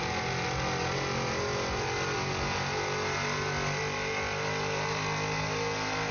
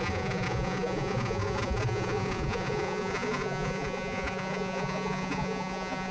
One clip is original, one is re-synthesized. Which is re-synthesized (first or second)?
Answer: second